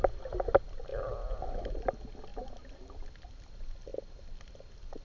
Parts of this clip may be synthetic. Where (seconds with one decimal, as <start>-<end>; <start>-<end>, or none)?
none